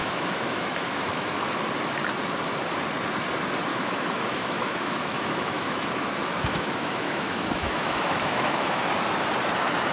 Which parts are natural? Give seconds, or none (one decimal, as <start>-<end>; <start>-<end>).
1.6-3.7; 8.9-9.9